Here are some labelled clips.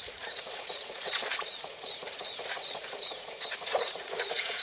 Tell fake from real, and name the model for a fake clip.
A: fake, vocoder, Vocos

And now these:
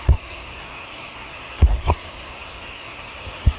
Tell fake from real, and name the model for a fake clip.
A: fake, codec, SNAC